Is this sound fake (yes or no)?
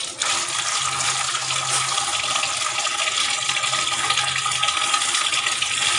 no